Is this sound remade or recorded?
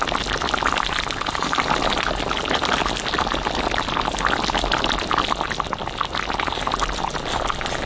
recorded